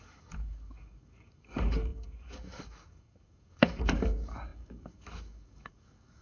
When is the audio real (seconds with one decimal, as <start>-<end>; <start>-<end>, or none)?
none